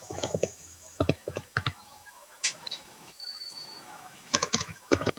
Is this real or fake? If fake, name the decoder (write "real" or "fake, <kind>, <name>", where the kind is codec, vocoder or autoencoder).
fake, autoencoder, DAC-VAE